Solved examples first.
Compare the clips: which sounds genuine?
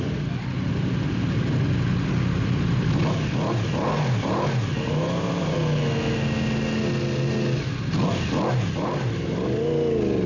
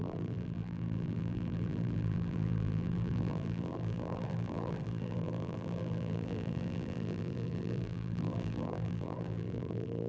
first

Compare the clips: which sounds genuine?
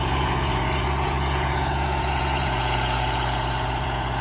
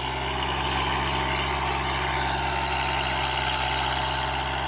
second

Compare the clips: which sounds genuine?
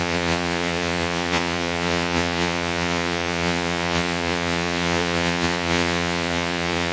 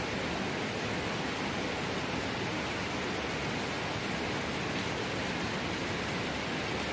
second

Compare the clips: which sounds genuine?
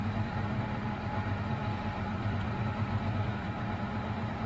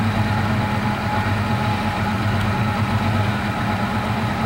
second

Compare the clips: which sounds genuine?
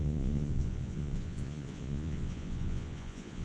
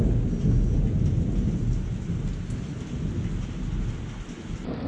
second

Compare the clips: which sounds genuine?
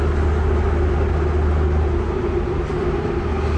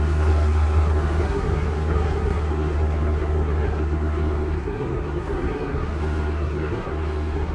first